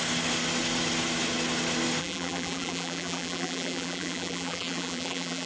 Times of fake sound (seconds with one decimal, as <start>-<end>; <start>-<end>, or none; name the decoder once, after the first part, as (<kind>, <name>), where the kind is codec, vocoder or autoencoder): 2.0-5.5 (vocoder, BigVGAN v2)